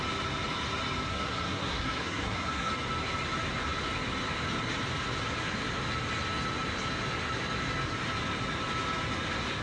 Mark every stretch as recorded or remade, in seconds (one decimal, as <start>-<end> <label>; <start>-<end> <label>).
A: 0.0-1.1 recorded; 1.1-2.7 remade; 2.7-9.6 recorded

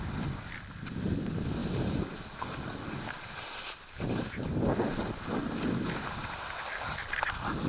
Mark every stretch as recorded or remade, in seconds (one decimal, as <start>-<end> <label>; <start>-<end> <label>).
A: 0.0-7.7 recorded

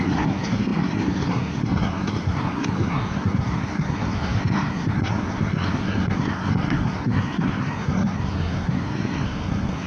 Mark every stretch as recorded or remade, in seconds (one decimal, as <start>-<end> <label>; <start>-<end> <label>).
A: 0.0-9.9 remade

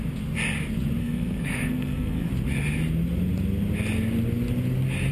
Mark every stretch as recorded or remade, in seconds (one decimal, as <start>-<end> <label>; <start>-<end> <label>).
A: 0.0-1.0 recorded; 1.0-2.3 remade; 2.3-5.1 recorded